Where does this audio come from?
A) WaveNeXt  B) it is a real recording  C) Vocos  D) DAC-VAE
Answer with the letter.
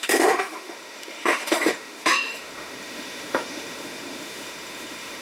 D